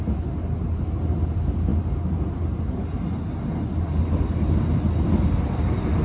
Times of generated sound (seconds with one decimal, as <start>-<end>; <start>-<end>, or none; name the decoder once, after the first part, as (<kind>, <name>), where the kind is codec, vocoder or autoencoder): none